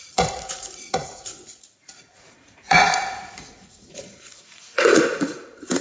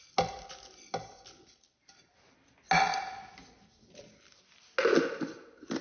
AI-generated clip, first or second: first